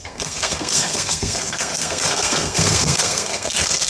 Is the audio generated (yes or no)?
yes